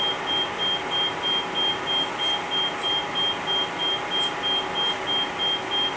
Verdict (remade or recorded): recorded